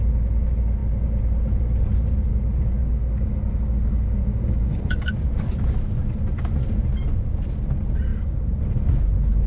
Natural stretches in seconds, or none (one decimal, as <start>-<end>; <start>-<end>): 0.0-2.8; 5.1-8.1; 8.6-9.5